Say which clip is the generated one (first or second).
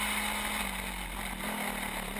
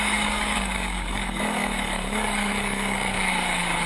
second